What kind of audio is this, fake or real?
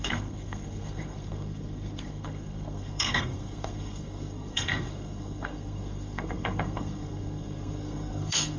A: fake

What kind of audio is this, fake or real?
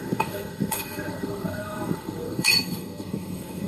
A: fake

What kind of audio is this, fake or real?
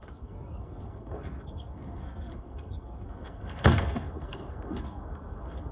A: fake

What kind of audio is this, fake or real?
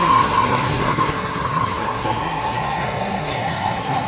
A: fake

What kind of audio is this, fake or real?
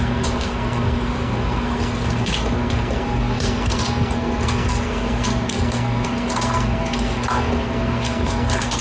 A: fake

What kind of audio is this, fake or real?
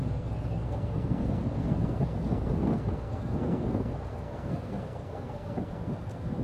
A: fake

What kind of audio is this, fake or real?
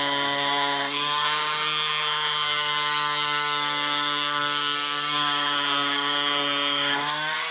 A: fake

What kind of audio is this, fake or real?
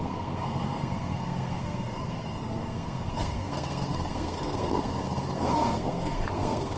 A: fake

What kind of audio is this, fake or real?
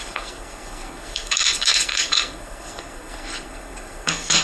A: fake